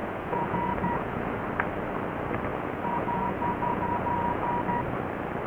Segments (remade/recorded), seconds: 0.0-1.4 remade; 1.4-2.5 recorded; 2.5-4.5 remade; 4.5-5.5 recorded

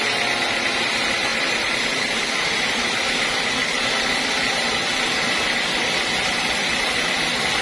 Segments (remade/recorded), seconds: 0.0-7.6 recorded

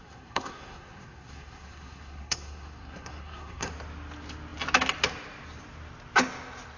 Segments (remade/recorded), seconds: 0.0-3.7 remade; 3.7-6.8 recorded

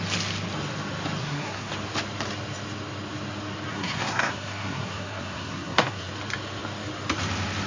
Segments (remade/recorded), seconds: 0.0-1.2 recorded; 1.2-1.7 remade; 1.7-3.7 recorded; 3.7-6.1 remade; 6.1-7.7 recorded